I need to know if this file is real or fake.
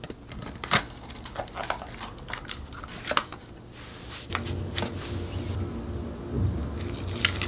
real